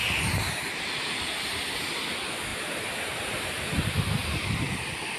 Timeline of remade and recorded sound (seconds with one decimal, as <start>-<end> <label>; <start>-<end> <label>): 0.0-2.5 recorded; 2.5-3.8 remade; 3.8-4.2 recorded; 4.2-5.2 remade